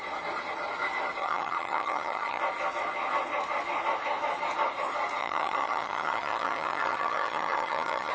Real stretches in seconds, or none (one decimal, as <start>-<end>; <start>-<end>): 0.0-1.2; 2.4-5.2